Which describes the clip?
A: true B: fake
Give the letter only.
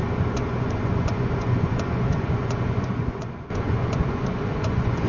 B